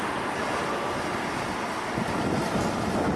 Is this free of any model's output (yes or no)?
yes